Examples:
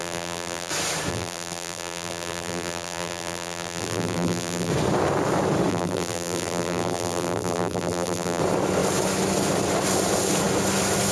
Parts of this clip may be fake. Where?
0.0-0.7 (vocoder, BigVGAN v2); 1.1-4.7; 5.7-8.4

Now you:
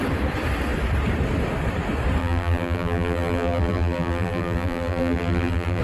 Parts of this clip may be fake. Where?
2.2-5.8 (vocoder, BigVGAN v2)